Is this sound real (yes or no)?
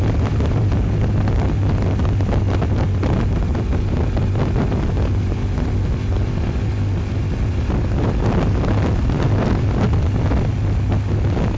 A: yes